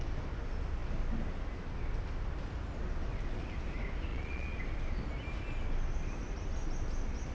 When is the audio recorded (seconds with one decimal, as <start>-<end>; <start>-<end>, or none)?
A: 0.0-4.1; 4.6-7.3